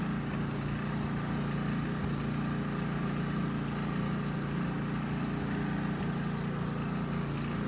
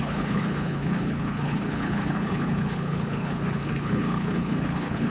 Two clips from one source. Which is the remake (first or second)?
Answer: second